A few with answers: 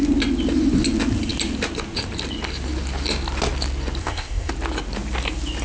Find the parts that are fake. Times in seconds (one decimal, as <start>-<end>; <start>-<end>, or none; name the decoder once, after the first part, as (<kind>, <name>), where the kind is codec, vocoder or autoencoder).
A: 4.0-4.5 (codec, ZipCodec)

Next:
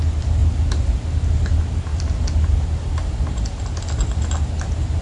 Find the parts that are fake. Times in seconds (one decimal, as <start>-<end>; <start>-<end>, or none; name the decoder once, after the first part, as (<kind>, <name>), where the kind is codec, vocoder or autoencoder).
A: 1.9-3.6 (vocoder, BigVGAN v2)

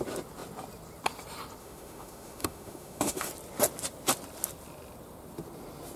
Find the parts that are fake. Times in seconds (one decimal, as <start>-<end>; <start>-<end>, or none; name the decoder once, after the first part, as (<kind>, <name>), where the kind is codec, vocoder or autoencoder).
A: 1.6-3.3 (autoencoder, DAC-VAE)